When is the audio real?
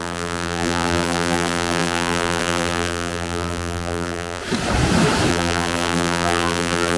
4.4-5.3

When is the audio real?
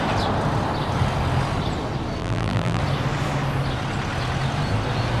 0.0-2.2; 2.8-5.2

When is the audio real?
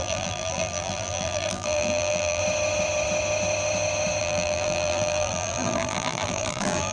2.4-4.2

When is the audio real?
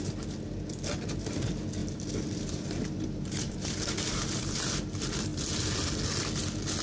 0.0-1.8; 4.7-6.8